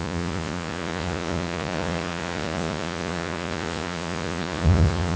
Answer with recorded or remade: remade